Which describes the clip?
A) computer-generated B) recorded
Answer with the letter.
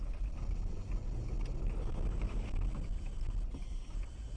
B